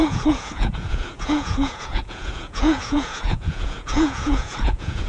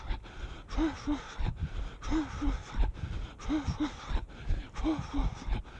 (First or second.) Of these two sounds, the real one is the second